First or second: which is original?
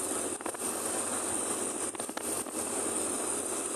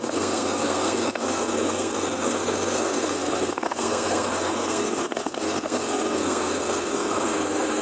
first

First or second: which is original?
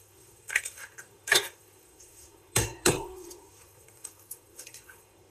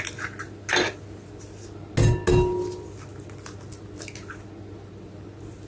second